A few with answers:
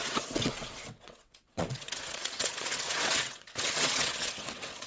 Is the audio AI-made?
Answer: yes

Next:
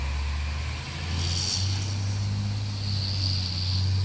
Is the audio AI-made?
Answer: no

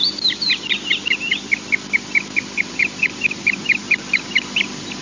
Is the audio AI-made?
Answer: no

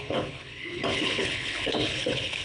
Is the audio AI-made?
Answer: yes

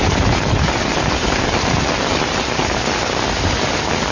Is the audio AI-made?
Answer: no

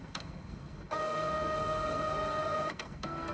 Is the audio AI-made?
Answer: yes